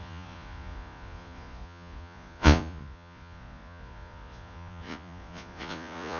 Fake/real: fake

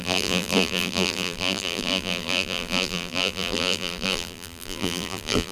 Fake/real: fake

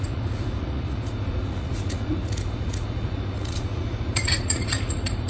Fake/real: fake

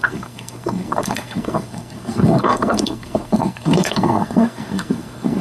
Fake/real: fake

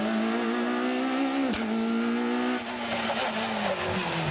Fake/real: real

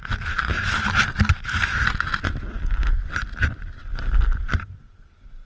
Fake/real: real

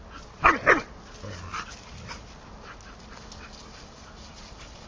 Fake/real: real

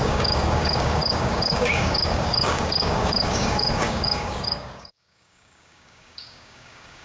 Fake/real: fake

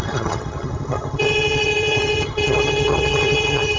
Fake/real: fake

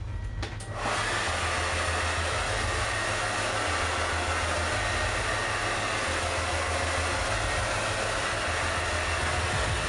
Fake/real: real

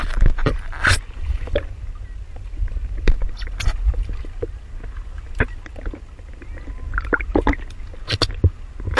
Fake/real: real